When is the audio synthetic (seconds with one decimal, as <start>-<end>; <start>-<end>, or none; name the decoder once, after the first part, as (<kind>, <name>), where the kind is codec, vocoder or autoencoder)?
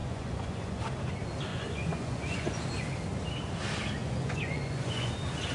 0.0-0.8 (vocoder, Vocos); 1.5-2.6; 4.0-5.1